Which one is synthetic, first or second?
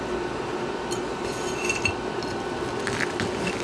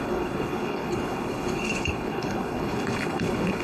second